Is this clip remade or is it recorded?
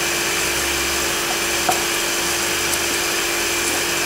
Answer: recorded